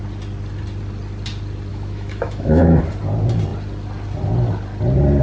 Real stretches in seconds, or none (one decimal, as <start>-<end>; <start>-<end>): 0.0-1.7; 2.8-5.2